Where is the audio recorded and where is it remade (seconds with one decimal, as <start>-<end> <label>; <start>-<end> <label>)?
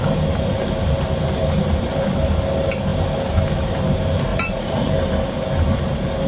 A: 0.0-4.3 recorded; 4.3-4.9 remade; 4.9-6.3 recorded